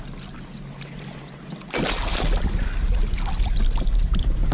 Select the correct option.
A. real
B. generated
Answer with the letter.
A